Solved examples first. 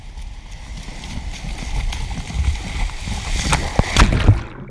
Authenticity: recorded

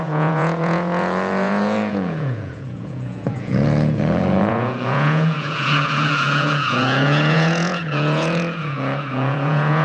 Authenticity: remade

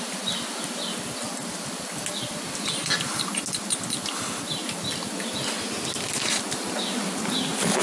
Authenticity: recorded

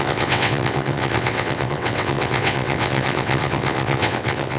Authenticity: remade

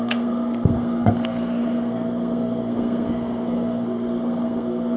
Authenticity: remade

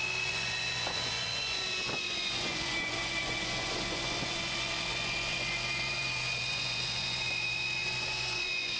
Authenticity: remade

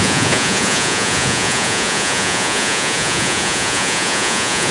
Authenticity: remade